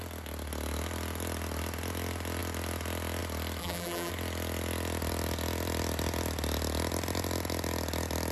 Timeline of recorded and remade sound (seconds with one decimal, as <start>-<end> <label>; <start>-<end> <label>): 0.0-3.6 recorded; 3.6-4.1 remade; 4.1-8.3 recorded